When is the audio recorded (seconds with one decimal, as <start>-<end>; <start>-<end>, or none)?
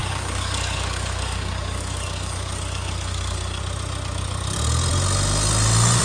3.6-6.0